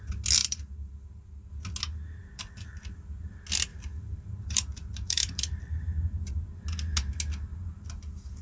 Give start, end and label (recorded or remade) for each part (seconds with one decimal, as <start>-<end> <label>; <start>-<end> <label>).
0.0-0.4 recorded; 0.4-1.5 remade; 1.5-2.2 recorded; 2.2-3.3 remade; 3.3-3.7 recorded; 3.7-6.3 remade; 6.3-7.6 recorded; 7.6-8.4 remade